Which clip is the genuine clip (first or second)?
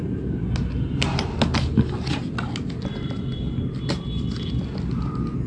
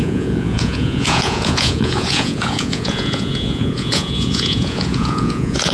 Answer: first